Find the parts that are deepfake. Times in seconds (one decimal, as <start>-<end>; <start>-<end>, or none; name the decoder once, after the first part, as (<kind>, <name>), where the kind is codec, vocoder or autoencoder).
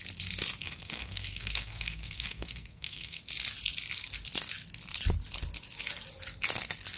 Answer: 0.6-3.2 (codec, SNAC)